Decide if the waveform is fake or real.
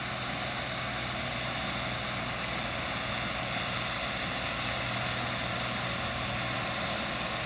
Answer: real